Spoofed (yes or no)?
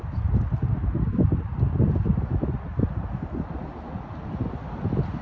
no